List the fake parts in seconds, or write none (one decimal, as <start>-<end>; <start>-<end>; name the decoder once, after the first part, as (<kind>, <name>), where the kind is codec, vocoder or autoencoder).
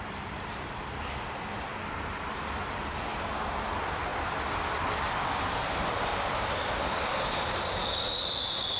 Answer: 0.0-1.7 (vocoder, BigVGAN v2); 3.3-4.1; 5.4-6.1; 7.2-8.8